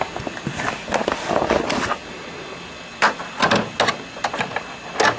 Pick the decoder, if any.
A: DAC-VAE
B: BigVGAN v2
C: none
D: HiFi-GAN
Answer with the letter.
C